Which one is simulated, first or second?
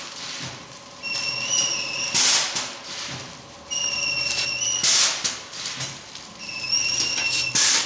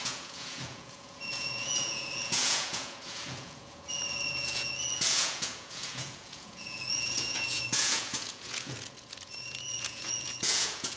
second